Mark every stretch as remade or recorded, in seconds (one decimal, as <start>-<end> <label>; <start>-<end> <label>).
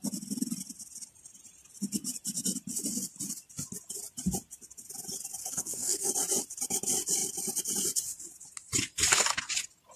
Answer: 0.0-5.4 recorded; 5.4-6.1 remade; 6.1-10.0 recorded